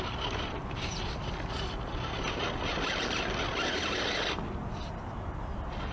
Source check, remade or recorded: recorded